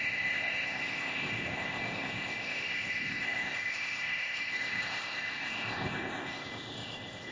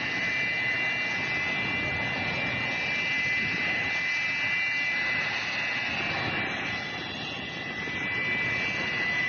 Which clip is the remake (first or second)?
first